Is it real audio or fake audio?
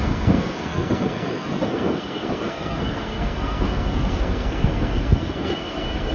fake